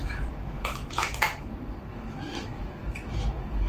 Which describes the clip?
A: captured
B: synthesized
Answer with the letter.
B